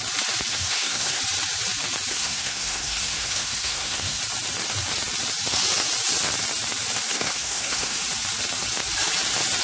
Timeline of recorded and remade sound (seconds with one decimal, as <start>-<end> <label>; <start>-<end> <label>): 0.0-0.5 recorded; 0.5-1.2 remade; 1.2-2.1 recorded; 2.1-4.2 remade; 4.2-7.1 recorded; 7.1-8.0 remade; 8.0-9.6 recorded